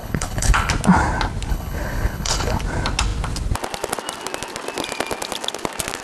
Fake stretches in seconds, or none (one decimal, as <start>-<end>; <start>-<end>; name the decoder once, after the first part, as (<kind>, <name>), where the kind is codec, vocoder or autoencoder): 0.0-0.7 (codec, HILCodec); 1.5-2.6